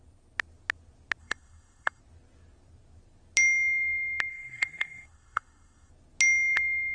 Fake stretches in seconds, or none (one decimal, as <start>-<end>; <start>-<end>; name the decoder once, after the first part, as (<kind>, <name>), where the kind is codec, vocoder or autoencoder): 1.2-2.0 (codec, SNAC); 4.3-5.9